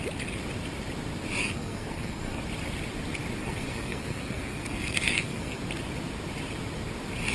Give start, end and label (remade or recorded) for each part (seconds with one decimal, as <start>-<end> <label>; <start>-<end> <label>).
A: 0.0-1.4 recorded; 1.4-2.4 remade; 2.4-3.4 recorded; 3.4-5.6 remade; 5.6-7.3 recorded